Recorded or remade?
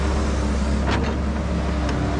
recorded